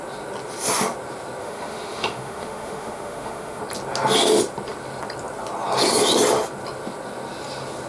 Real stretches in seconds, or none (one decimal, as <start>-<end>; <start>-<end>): 0.0-1.4; 3.6-7.9